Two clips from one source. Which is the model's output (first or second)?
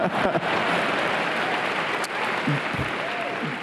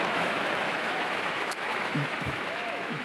second